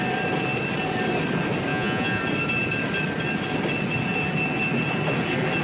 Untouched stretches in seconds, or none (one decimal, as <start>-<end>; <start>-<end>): 0.0-1.7; 2.2-5.6